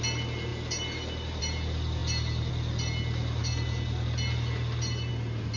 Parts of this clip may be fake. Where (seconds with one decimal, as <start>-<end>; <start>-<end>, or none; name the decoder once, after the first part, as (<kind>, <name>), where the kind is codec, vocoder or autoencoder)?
none